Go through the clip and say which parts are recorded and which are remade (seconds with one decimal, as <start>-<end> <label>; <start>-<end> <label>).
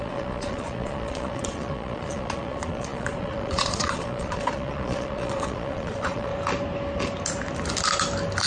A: 0.0-6.3 remade; 6.3-8.5 recorded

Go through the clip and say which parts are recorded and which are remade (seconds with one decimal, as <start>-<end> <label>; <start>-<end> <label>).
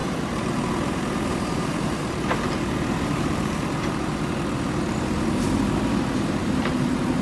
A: 0.0-4.3 remade; 4.3-6.4 recorded; 6.4-7.2 remade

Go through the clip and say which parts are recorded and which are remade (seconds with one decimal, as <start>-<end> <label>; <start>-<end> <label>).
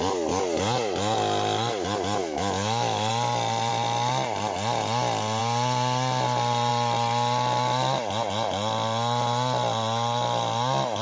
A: 0.0-2.2 recorded; 2.2-3.1 remade; 3.1-11.0 recorded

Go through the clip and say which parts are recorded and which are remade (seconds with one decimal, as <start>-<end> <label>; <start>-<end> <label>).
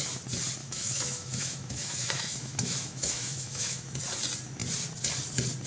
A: 0.0-0.6 recorded; 0.6-4.0 remade; 4.0-5.7 recorded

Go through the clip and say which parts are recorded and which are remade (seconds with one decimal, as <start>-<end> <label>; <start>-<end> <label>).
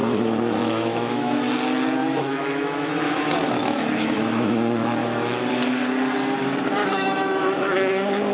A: 0.0-0.6 recorded; 0.6-1.5 remade; 1.5-2.0 recorded; 2.0-3.2 remade; 3.2-3.6 recorded; 3.6-5.5 remade; 5.5-6.8 recorded; 6.8-7.9 remade; 7.9-8.3 recorded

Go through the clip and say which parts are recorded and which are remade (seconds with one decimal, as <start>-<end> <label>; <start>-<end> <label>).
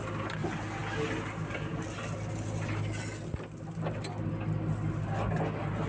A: 0.0-5.9 recorded